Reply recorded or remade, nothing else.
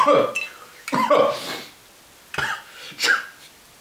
recorded